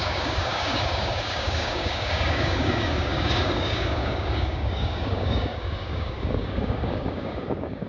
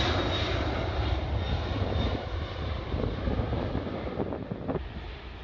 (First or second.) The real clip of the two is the second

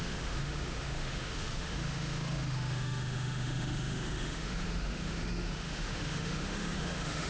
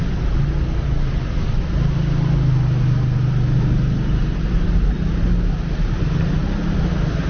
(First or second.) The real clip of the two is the second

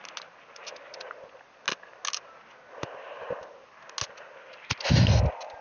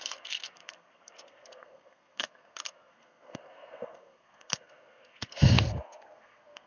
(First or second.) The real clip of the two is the first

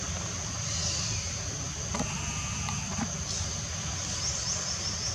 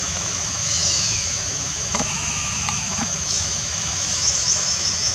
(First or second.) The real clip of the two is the first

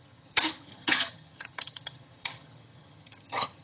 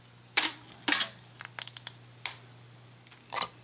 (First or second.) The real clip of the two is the second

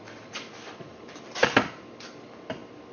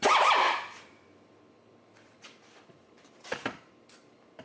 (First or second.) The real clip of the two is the first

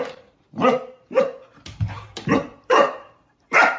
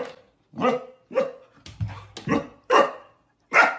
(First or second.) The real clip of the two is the second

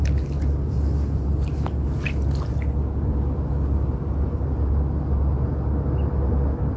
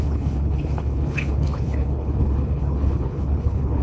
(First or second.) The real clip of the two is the first